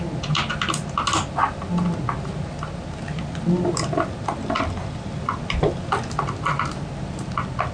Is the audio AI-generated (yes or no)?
no